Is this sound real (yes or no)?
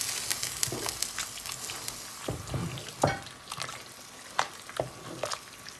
yes